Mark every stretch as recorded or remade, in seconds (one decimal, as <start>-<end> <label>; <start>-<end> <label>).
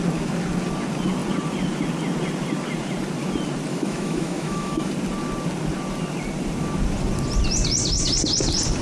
0.0-3.7 recorded; 3.7-4.9 remade; 4.9-8.8 recorded